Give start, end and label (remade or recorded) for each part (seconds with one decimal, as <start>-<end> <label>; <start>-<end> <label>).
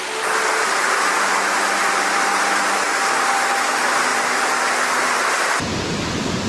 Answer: 0.0-6.5 recorded